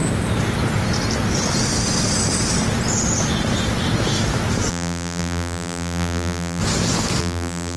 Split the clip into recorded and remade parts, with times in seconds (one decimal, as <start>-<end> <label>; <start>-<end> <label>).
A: 0.0-4.7 recorded; 4.7-6.6 remade; 6.6-7.2 recorded; 7.2-7.8 remade